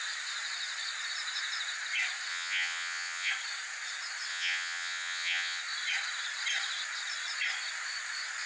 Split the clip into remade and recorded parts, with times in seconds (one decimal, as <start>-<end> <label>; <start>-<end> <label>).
0.0-2.3 recorded; 2.3-3.3 remade; 3.3-4.3 recorded; 4.3-5.6 remade; 5.6-8.5 recorded